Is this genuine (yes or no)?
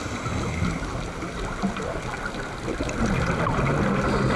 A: yes